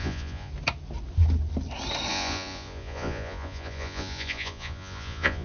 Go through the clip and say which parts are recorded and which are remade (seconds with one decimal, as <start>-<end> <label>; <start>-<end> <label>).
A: 0.0-0.5 remade; 0.5-2.1 recorded; 2.1-5.4 remade